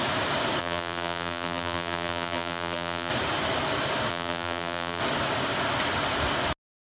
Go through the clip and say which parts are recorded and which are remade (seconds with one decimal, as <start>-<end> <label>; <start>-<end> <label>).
0.0-0.6 recorded; 0.6-3.1 remade; 3.1-4.1 recorded; 4.1-5.0 remade; 5.0-6.8 recorded